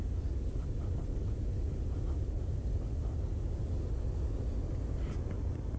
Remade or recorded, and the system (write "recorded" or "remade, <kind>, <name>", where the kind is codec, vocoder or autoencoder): recorded